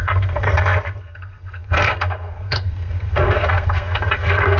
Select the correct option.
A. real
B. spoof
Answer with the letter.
B